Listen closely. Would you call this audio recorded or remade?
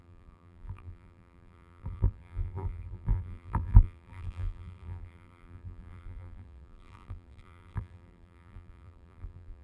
remade